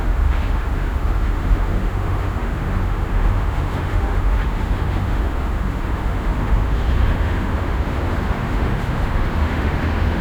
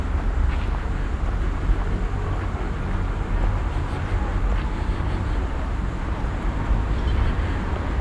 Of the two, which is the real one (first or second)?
second